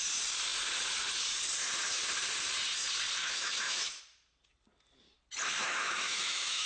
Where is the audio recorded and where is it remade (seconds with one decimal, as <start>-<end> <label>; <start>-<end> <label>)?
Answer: 0.0-3.2 recorded; 3.2-4.0 remade; 4.0-5.6 recorded; 5.6-6.7 remade